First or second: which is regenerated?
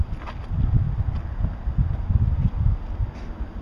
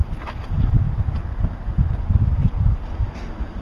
second